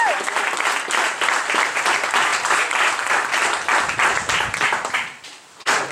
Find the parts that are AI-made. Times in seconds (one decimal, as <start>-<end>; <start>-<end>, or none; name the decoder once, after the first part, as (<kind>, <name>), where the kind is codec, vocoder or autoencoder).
none